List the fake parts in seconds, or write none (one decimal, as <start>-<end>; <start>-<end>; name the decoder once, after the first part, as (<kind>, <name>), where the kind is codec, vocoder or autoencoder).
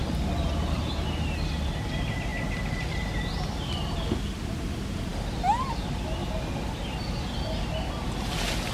none